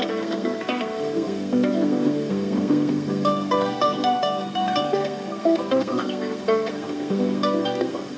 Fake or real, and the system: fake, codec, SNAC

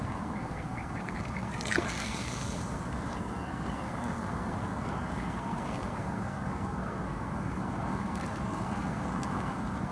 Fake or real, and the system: fake, codec, SNAC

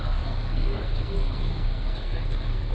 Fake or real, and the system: fake, codec, SNAC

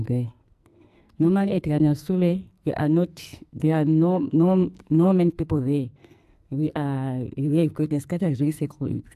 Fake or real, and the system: fake, codec, SNAC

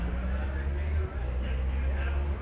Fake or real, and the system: real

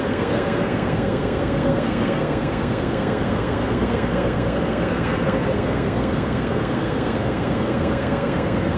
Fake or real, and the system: fake, codec, SNAC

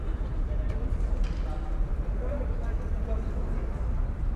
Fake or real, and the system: real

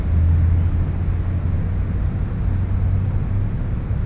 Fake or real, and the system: real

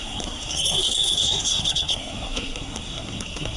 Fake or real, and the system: fake, codec, SNAC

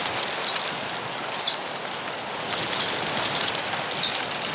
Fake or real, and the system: real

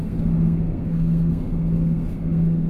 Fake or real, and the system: fake, codec, SNAC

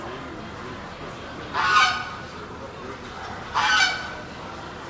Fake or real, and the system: real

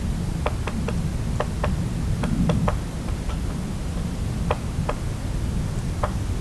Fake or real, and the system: real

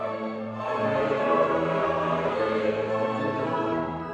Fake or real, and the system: fake, codec, SNAC